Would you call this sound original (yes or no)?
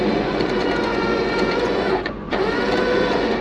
no